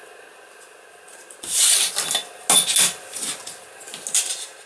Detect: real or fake real